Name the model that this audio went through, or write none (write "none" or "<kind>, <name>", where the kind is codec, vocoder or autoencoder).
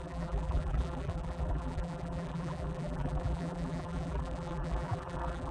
vocoder, BigVGAN v2